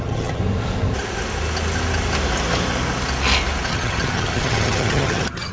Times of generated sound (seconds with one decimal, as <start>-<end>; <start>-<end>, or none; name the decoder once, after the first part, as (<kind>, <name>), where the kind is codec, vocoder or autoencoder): 0.0-0.4 (vocoder, HiFi-GAN); 3.7-5.5